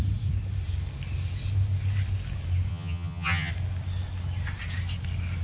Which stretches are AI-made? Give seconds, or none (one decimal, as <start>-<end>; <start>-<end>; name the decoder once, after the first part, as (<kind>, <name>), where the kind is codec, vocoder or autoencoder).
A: 2.7-3.5 (vocoder, HiFi-GAN)